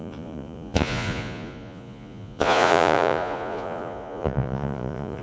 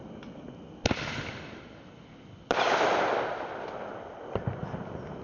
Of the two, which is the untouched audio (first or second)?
second